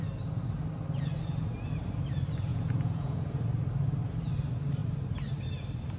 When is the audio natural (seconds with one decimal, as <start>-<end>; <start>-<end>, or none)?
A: 0.0-2.5; 3.4-6.0